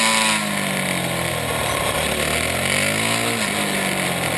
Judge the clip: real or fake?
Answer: real